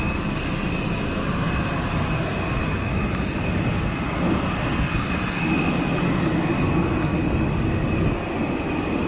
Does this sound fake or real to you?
real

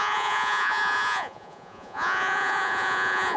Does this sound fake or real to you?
fake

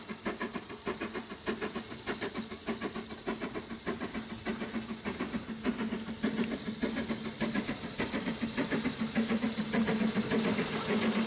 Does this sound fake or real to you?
real